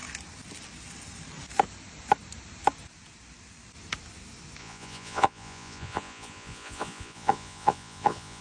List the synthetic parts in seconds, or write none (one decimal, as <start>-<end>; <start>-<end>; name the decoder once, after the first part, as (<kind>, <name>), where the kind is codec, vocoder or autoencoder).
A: 4.6-8.4 (vocoder, Vocos)